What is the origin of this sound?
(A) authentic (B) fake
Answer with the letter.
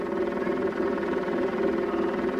A